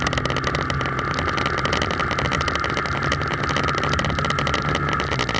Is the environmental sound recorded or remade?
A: recorded